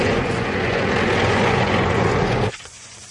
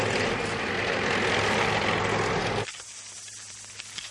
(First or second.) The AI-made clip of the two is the first